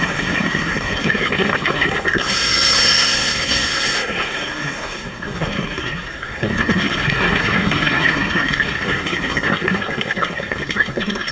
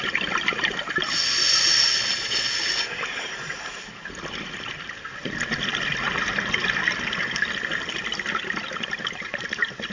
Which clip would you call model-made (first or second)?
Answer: first